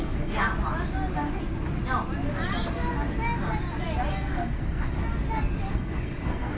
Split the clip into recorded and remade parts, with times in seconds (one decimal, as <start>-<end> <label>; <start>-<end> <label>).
0.0-0.5 remade; 0.5-4.1 recorded; 4.1-5.0 remade; 5.0-5.7 recorded; 5.7-6.6 remade